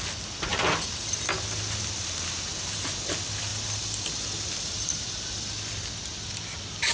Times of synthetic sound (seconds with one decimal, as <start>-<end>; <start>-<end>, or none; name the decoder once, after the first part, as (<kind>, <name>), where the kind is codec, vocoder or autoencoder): none